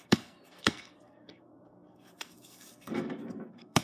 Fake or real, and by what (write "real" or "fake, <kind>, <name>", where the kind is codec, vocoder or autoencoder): fake, codec, SNAC